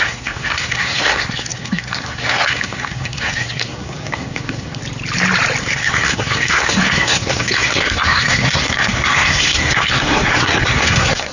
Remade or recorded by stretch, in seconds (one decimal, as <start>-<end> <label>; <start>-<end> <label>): 0.0-4.8 remade; 4.8-5.6 recorded; 5.6-11.3 remade